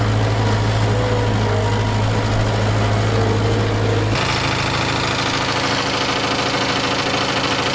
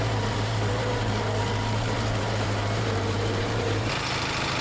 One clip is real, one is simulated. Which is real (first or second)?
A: first